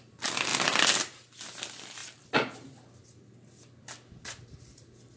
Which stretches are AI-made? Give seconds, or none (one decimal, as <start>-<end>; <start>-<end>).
none